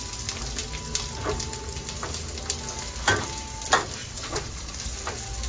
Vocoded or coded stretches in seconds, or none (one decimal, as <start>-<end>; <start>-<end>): 4.0-4.7

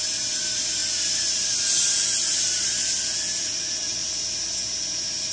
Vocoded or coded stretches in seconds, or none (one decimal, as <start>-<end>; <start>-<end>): none

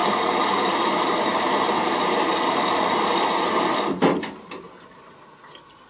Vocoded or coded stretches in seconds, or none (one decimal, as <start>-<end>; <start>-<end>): 0.0-2.6